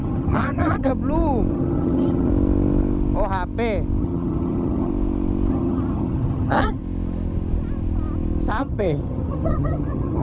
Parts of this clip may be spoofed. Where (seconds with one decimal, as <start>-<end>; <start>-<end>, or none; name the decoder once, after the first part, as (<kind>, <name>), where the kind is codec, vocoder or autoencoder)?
0.0-0.9 (vocoder, HiFi-GAN); 1.5-2.3; 4.0-4.9; 5.5-6.8; 8.6-10.2